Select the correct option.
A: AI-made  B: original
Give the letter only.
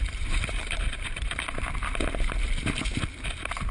B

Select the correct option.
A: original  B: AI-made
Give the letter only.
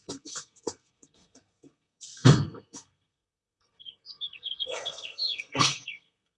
B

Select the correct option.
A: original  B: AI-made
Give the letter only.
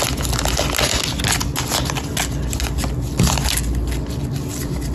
A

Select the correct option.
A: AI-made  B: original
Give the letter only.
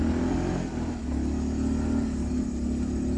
B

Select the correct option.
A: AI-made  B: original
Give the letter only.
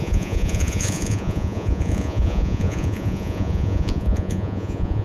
A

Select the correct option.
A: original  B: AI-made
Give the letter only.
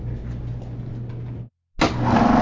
A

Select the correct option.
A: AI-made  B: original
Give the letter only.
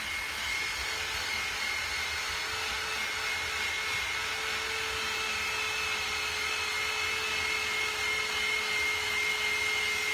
B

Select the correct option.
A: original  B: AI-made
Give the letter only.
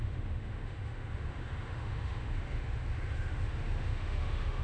B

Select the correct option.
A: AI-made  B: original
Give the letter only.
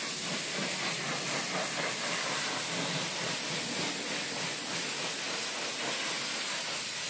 B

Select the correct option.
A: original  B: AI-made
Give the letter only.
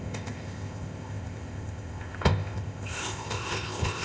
B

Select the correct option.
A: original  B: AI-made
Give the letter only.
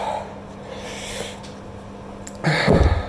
A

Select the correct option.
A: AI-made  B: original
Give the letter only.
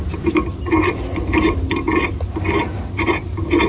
B